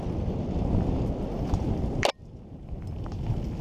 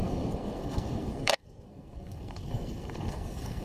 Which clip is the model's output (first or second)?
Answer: second